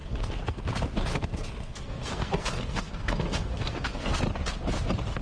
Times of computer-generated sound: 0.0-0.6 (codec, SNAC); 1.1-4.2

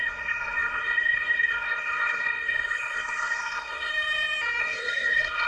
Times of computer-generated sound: 0.0-3.9 (codec, SNAC); 4.6-5.5

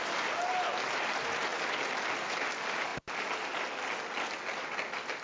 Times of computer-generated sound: none

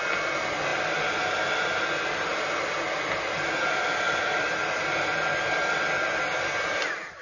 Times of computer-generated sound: none